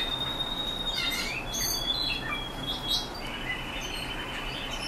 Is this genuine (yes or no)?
yes